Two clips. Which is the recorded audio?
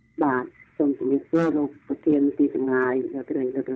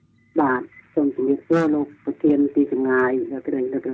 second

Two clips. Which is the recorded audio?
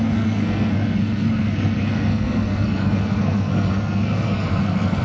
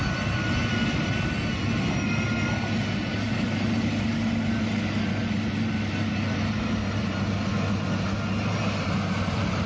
second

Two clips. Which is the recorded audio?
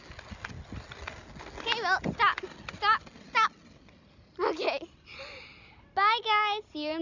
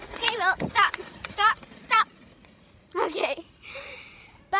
first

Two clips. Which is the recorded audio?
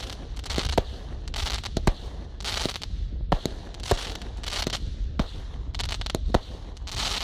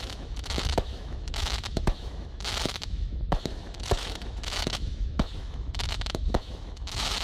first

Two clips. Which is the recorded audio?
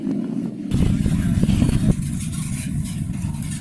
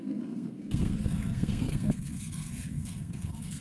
first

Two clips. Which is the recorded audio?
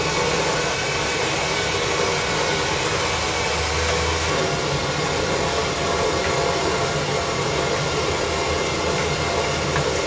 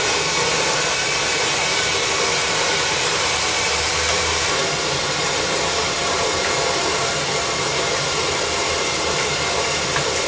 first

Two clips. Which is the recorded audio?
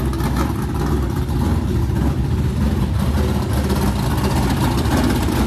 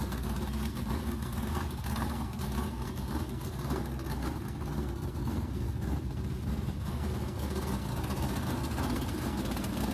first